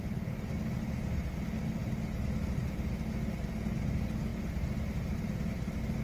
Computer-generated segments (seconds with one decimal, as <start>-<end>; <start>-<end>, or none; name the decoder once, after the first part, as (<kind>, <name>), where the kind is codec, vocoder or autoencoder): none